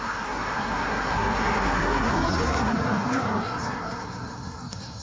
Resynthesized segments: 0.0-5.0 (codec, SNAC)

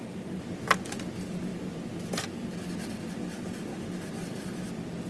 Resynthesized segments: none

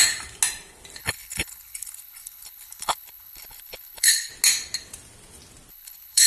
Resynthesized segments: 1.0-4.3 (codec, HILCodec); 5.7-6.3

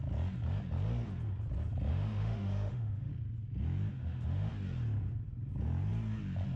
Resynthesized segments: 1.9-3.1 (autoencoder, DAC-VAE); 3.9-4.5

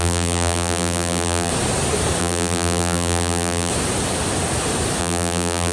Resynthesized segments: 0.0-1.5 (vocoder, BigVGAN v2); 2.2-3.7; 5.0-5.7

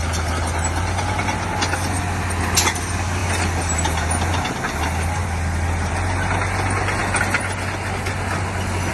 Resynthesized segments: none

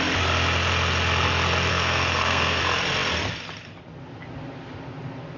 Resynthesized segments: 1.7-2.6 (codec, SNAC)

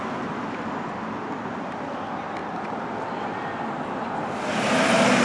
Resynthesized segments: none